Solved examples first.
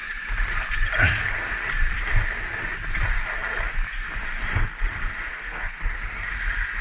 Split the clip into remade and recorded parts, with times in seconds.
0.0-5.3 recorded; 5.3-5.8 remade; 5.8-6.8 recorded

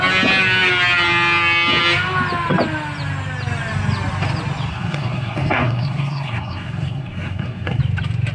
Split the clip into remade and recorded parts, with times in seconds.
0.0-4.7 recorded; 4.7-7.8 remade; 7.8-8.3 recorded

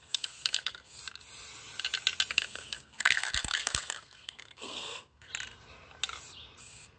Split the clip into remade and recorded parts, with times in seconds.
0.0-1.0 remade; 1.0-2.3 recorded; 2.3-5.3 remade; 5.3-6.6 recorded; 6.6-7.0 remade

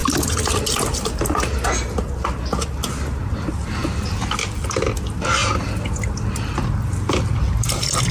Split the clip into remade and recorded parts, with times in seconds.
0.0-8.1 recorded

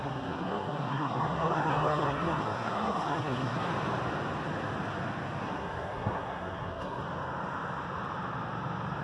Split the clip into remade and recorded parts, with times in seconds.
0.0-3.7 remade; 3.7-5.4 recorded; 5.4-7.0 remade; 7.0-9.0 recorded

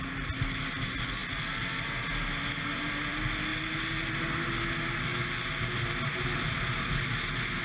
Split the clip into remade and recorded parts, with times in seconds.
0.0-7.6 recorded

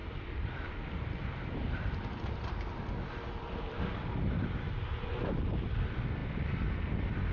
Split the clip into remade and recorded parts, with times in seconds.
0.0-7.3 recorded

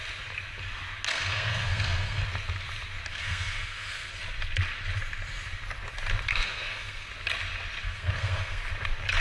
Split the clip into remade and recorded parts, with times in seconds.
0.0-1.1 recorded; 1.1-2.2 remade; 2.2-3.1 recorded; 3.1-4.1 remade; 4.1-6.3 recorded; 6.3-7.1 remade; 7.1-7.8 recorded; 7.8-8.6 remade; 8.6-9.2 recorded